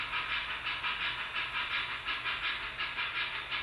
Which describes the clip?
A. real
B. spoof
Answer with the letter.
A